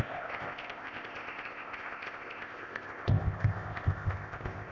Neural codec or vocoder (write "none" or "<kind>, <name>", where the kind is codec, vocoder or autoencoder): codec, ZipCodec